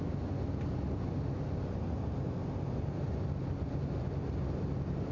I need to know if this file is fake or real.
real